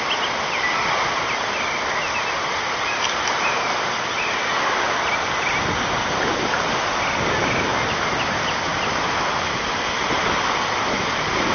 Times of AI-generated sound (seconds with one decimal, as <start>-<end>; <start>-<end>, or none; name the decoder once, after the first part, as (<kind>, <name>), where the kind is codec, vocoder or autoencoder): none